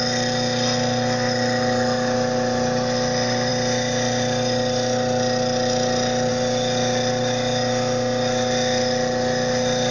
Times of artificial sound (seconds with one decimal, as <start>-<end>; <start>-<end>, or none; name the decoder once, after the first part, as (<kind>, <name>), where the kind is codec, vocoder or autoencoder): none